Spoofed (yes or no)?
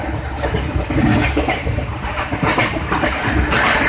no